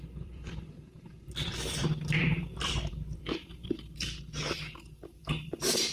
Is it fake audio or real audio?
fake